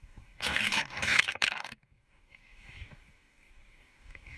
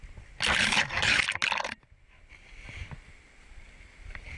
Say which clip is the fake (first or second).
first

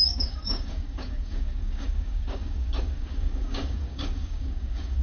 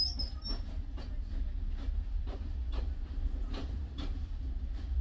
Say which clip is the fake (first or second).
first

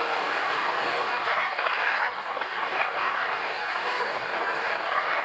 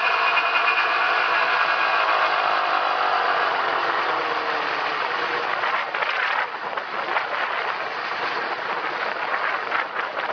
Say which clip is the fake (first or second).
first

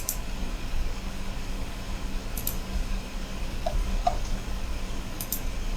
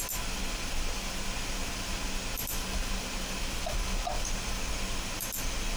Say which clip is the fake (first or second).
first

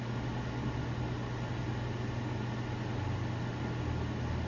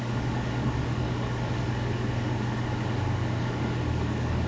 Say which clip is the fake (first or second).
second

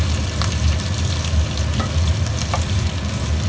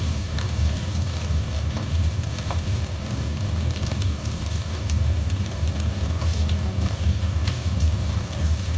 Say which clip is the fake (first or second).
second